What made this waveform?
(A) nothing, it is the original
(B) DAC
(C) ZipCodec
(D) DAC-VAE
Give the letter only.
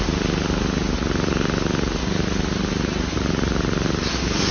A